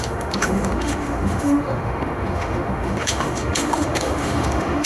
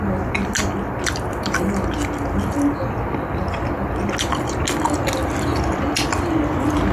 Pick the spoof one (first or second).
first